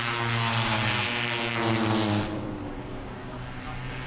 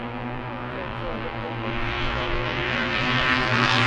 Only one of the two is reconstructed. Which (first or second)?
second